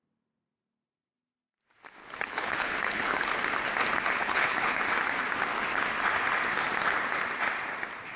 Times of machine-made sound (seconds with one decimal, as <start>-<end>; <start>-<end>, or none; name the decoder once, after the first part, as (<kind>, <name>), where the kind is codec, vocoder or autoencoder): 2.0-3.3 (codec, HILCodec); 4.2-4.8